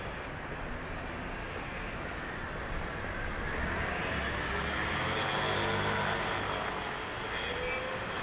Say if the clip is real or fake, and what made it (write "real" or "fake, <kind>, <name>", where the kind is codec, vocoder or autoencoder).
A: real